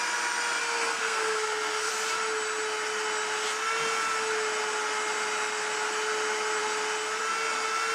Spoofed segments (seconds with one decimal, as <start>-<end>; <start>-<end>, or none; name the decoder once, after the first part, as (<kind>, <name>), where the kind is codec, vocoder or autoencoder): 0.6-1.9 (codec, SNAC)